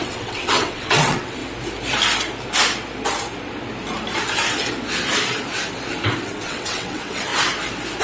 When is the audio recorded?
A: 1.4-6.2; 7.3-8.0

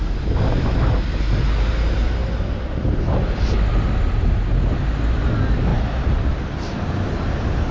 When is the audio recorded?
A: 0.0-3.7; 4.3-5.7; 6.5-7.7